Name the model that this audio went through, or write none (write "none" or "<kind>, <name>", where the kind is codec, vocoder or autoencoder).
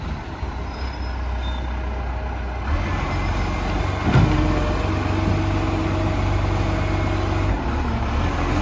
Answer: none